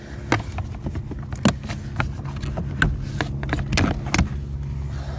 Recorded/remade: recorded